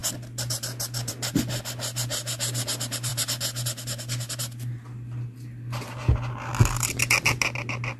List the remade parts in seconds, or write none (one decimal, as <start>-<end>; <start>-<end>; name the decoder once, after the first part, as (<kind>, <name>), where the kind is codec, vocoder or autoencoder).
none